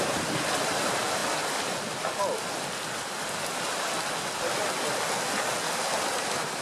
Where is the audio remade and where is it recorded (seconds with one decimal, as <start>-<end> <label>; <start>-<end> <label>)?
0.0-6.6 recorded